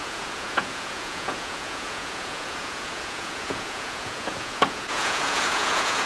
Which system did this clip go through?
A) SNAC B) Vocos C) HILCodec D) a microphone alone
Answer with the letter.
B